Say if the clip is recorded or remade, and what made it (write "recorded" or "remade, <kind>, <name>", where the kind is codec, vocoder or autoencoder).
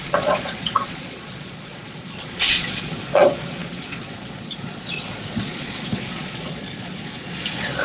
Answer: remade, vocoder, Vocos